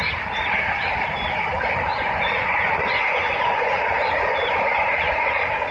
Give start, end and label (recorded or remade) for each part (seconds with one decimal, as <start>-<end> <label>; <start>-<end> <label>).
0.0-1.9 recorded; 1.9-5.3 remade; 5.3-5.7 recorded